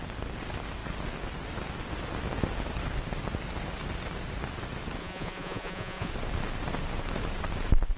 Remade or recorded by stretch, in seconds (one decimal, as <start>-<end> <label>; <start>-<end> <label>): 0.0-5.0 recorded; 5.0-6.1 remade; 6.1-8.0 recorded